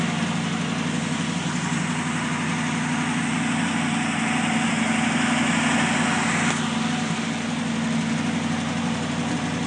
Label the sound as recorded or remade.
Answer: recorded